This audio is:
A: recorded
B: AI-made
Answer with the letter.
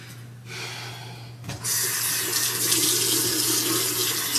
A